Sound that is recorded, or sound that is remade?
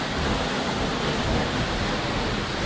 recorded